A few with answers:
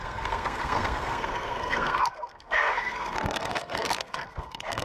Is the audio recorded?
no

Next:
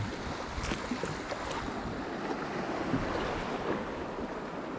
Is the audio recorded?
yes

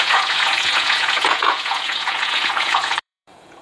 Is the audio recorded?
no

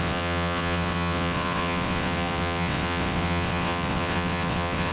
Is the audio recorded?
no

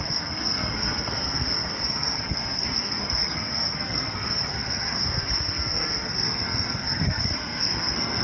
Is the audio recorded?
no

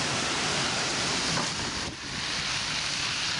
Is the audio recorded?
yes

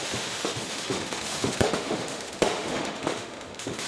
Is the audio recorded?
no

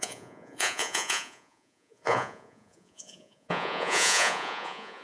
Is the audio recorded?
no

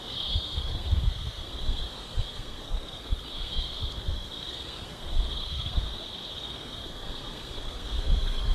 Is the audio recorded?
no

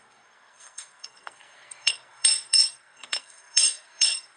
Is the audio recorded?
no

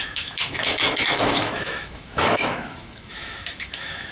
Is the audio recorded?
no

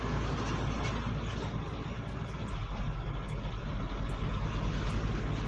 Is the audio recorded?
yes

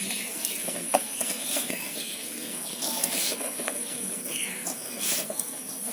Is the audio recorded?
no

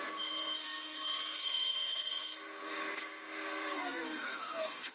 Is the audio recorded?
no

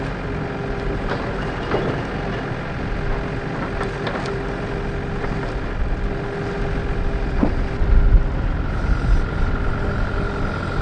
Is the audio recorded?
yes